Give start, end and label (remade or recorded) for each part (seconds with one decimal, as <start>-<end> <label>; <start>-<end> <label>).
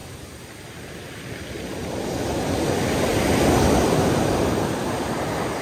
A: 0.0-1.3 remade; 1.3-3.1 recorded; 3.1-4.7 remade; 4.7-5.6 recorded